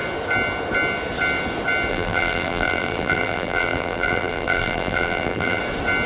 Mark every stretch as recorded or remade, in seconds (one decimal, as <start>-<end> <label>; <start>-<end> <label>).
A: 0.0-1.9 recorded; 1.9-5.6 remade; 5.6-6.1 recorded